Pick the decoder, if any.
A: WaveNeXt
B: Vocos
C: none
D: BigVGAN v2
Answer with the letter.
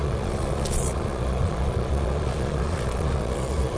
B